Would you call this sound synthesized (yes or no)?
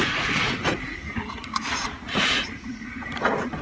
yes